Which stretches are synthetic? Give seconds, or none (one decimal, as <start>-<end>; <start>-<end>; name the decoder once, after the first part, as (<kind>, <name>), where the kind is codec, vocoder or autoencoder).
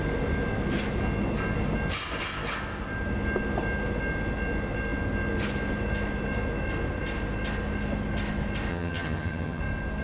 8.7-9.6 (vocoder, HiFi-GAN)